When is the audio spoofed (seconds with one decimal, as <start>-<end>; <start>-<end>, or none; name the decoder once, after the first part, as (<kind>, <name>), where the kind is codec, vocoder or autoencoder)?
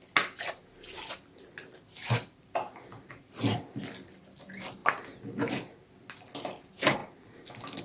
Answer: none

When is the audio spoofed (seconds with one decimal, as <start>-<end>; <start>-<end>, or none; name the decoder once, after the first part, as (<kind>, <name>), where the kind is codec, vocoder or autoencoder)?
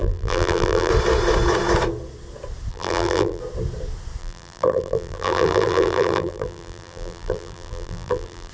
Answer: 0.0-0.9 (vocoder, BigVGAN v2); 2.7-3.4; 4.2-8.5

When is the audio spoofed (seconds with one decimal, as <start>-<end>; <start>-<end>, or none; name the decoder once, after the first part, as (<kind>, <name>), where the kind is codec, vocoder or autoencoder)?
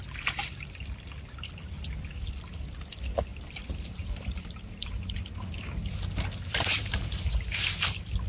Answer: 3.3-5.5 (vocoder, BigVGAN v2); 6.8-7.4